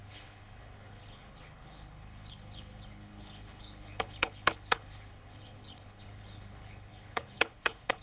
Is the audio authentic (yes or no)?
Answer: no